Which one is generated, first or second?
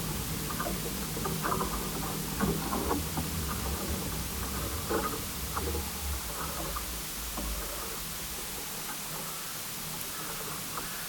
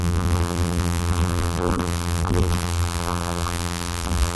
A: second